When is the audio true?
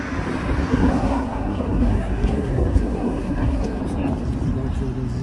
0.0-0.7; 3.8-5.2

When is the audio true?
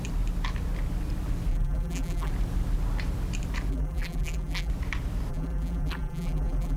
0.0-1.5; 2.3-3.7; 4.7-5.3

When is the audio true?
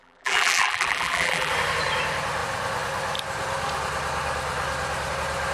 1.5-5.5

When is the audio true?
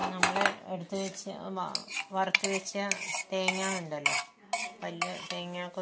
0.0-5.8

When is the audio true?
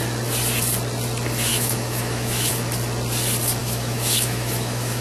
0.0-1.5; 2.5-3.6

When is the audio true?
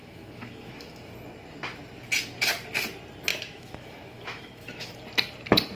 1.1-3.3; 4.9-5.7